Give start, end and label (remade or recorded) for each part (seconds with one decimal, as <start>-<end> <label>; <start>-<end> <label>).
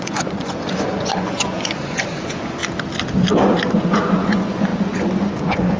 0.0-2.6 remade; 2.6-3.4 recorded; 3.4-5.8 remade